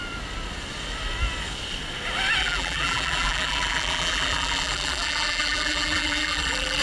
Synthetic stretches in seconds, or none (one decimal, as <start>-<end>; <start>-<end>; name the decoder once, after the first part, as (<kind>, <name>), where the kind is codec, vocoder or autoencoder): 2.4-6.8 (vocoder, BigVGAN v2)